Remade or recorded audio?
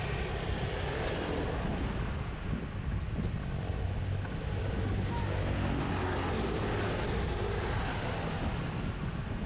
recorded